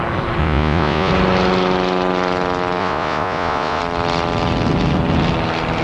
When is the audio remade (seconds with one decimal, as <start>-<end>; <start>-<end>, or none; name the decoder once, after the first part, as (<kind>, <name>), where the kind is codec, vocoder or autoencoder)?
0.4-1.1 (vocoder, Vocos); 2.8-3.8